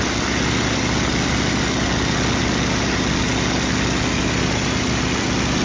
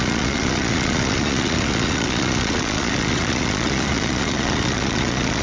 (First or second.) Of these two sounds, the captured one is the first